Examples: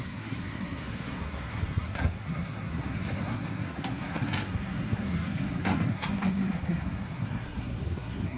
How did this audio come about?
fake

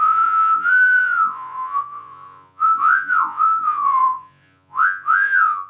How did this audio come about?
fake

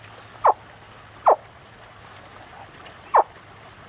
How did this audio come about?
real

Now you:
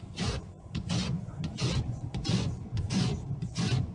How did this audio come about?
fake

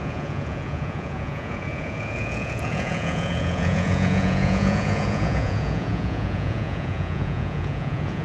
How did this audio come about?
fake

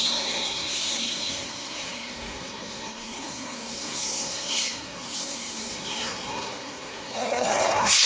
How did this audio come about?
fake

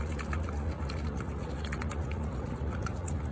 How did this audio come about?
fake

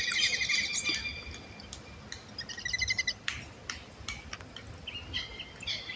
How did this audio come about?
real